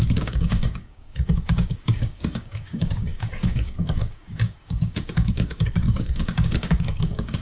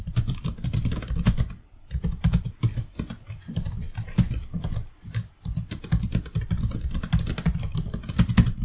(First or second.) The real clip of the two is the second